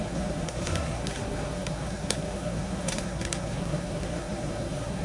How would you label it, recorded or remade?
remade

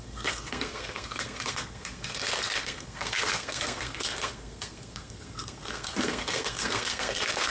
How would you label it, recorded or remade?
remade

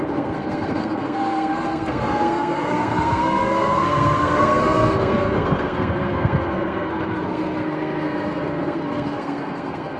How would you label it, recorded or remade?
remade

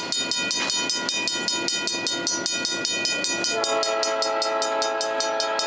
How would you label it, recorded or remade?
recorded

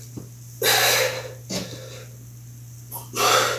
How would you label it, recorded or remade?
recorded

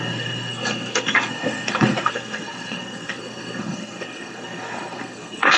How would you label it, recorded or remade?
remade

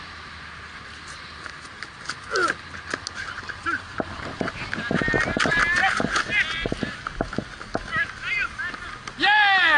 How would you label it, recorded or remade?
recorded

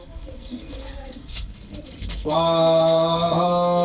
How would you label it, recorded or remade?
remade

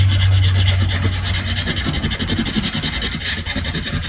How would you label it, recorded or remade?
recorded